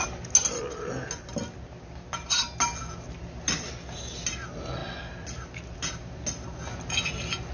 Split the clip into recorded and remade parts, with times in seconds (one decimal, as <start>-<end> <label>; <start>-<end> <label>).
0.0-7.5 recorded